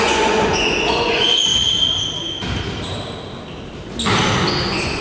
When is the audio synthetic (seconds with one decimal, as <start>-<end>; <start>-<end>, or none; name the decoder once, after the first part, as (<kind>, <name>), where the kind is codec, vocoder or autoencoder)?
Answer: 0.0-1.5 (vocoder, Vocos); 4.5-5.0